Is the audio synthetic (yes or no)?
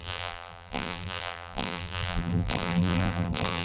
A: yes